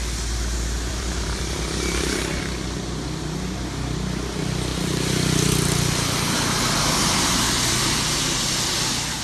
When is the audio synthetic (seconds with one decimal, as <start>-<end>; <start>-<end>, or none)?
0.9-2.4; 4.7-6.3